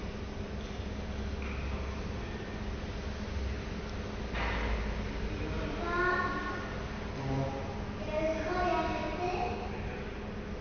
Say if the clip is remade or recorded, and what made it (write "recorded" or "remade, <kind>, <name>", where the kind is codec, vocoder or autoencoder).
recorded